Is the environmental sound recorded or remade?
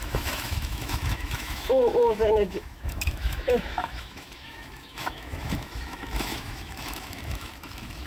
remade